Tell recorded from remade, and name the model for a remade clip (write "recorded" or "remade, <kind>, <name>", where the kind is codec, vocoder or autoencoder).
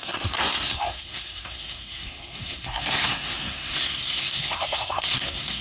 remade, codec, SNAC